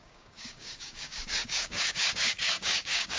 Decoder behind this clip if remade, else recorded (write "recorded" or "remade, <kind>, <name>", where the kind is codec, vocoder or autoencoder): remade, codec, DAC